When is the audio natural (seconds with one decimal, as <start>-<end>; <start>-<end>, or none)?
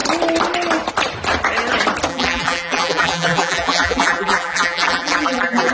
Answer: 0.0-2.1